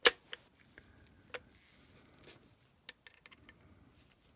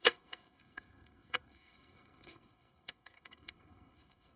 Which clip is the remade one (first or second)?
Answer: second